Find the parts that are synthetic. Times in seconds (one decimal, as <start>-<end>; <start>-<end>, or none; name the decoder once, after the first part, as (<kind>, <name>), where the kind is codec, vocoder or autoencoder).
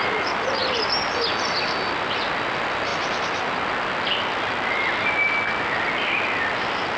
none